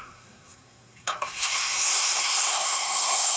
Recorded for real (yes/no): no